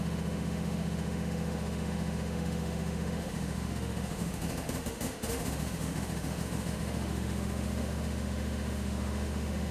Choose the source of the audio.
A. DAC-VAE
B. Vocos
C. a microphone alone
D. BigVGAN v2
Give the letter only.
A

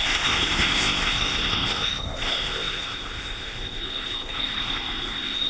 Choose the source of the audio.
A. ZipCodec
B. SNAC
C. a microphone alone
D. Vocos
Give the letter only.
A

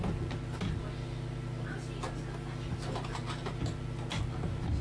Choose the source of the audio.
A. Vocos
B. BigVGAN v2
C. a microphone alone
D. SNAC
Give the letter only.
C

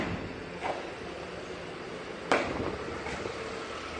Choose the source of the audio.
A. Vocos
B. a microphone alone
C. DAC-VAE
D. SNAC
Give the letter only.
B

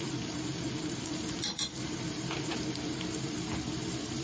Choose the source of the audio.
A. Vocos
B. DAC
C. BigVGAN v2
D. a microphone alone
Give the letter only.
C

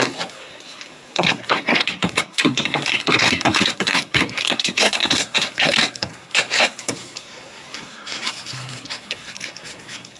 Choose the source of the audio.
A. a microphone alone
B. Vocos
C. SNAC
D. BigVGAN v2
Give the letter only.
C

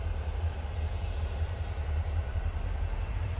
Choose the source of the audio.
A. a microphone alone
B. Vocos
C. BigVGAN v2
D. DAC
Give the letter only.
C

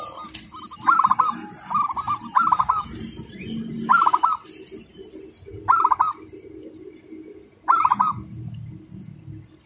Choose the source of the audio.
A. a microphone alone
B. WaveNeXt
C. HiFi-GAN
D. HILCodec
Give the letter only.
A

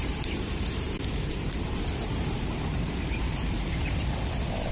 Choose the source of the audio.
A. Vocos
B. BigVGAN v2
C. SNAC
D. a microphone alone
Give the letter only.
B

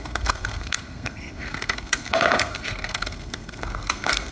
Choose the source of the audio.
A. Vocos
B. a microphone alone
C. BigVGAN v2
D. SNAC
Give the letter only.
D